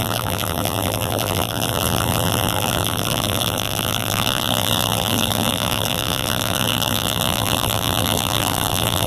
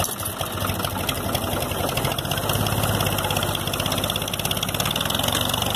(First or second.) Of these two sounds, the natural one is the second